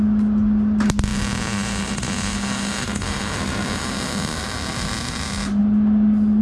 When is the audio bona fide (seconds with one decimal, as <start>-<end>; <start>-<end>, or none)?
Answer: 0.0-6.4